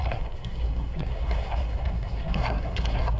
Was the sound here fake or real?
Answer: fake